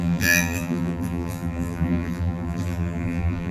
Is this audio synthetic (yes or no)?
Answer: yes